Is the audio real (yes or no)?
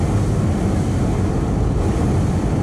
yes